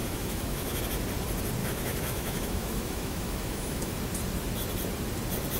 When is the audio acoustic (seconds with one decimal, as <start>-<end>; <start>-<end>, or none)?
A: 0.8-1.6; 4.0-5.6